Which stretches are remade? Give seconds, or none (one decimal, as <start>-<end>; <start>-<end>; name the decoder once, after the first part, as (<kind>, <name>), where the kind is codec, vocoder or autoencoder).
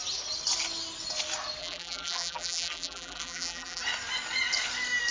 1.6-3.8 (vocoder, BigVGAN v2)